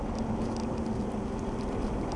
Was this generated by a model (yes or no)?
no